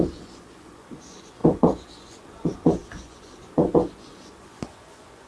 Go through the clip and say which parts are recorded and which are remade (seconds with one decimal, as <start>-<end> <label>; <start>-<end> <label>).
0.0-5.3 remade